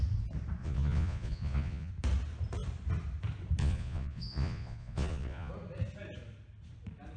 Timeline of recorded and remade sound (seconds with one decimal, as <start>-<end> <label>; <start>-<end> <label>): 0.0-0.6 recorded; 0.6-1.9 remade; 1.9-3.6 recorded; 3.6-5.5 remade; 5.5-7.2 recorded

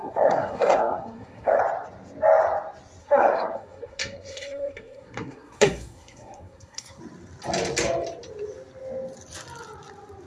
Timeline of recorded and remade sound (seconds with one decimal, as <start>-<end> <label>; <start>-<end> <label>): 0.0-1.6 remade; 1.6-3.0 recorded; 3.0-7.0 remade; 7.0-10.3 recorded